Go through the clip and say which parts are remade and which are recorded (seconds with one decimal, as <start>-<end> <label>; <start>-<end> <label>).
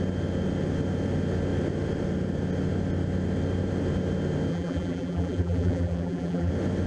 0.0-4.5 recorded; 4.5-6.5 remade; 6.5-6.9 recorded